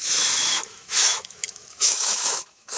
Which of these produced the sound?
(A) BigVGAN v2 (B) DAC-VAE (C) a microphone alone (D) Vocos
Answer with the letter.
B